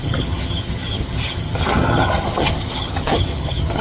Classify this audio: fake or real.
fake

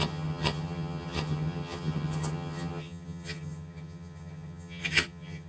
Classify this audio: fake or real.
fake